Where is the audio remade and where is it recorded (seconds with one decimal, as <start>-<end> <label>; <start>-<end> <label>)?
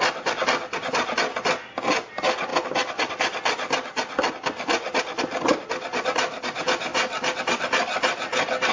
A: 0.0-8.7 recorded